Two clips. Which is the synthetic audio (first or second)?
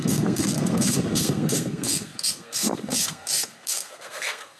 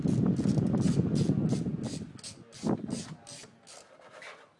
first